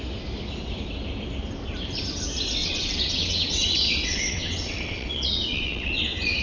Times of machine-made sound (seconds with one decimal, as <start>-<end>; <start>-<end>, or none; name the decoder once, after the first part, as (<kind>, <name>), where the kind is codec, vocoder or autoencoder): 2.6-6.4 (vocoder, WaveNeXt)